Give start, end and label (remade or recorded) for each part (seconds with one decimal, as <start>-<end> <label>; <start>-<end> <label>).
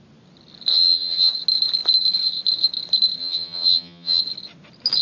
0.0-0.7 recorded; 0.7-1.3 remade; 1.3-3.2 recorded; 3.2-4.2 remade; 4.2-5.0 recorded